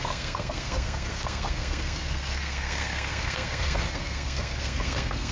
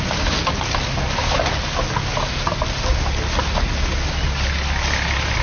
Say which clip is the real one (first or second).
second